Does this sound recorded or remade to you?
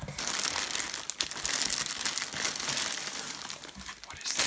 recorded